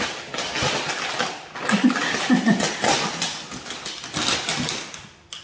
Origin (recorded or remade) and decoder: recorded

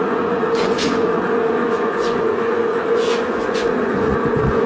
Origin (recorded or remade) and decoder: remade, vocoder, Vocos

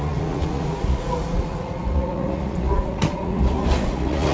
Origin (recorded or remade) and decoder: remade, vocoder, Vocos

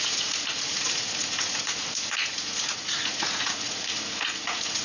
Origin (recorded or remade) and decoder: remade, vocoder, Vocos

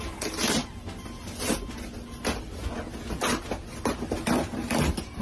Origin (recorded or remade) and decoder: recorded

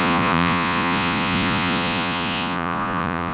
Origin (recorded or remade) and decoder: remade, vocoder, Vocos